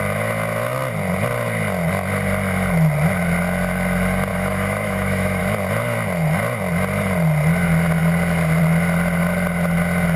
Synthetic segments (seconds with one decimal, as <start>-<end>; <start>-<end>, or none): 4.3-5.4